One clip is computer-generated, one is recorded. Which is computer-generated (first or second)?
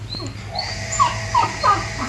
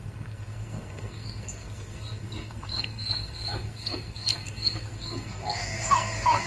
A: second